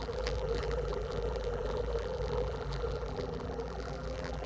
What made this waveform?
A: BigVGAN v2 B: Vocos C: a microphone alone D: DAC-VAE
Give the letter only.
A